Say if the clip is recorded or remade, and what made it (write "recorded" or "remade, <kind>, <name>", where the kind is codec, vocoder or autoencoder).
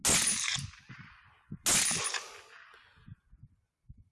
recorded